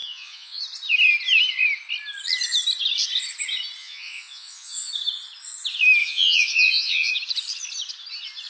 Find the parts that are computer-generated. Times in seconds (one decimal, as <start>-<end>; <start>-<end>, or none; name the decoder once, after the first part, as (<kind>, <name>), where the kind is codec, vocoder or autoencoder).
0.0-0.6 (vocoder, Vocos); 3.8-4.9; 6.0-7.1